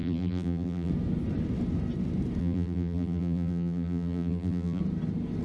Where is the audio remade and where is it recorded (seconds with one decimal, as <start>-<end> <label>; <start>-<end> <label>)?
0.0-0.9 remade; 0.9-2.4 recorded; 2.4-4.8 remade; 4.8-5.4 recorded